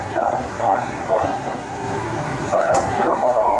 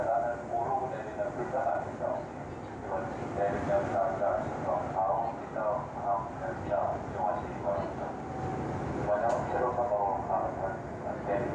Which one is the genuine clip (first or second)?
second